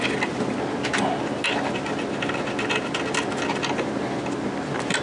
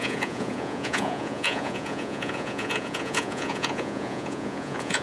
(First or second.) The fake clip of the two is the second